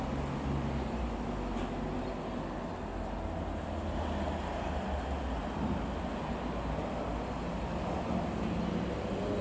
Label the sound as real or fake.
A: real